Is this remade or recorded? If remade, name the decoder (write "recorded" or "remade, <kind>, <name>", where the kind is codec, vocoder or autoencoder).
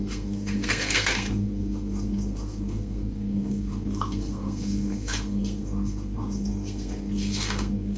remade, codec, SNAC